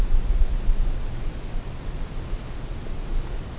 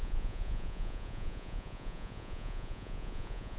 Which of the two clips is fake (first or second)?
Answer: second